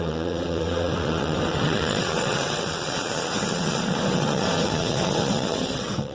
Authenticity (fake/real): fake